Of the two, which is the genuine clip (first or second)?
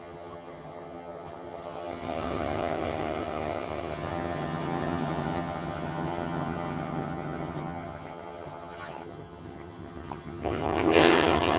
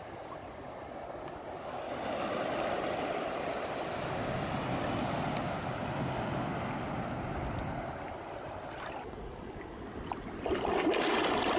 second